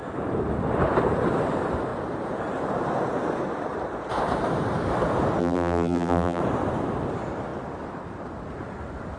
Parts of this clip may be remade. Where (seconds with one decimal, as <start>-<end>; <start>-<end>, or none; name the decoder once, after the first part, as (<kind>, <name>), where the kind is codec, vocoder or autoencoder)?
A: 5.4-6.4 (vocoder, BigVGAN v2)